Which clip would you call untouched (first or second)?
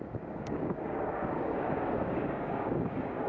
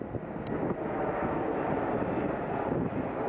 second